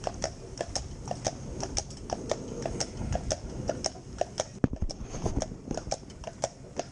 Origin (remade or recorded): recorded